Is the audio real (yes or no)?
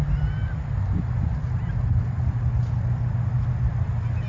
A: yes